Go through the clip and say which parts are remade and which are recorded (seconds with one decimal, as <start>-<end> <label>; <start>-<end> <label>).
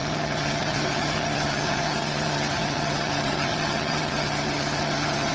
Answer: 0.0-5.3 remade